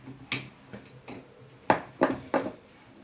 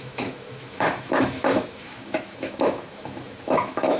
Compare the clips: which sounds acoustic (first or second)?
first